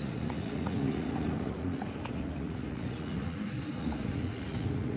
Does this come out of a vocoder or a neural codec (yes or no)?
yes